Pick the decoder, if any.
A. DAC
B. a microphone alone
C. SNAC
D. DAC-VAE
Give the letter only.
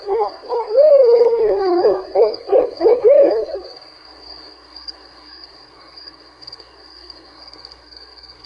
C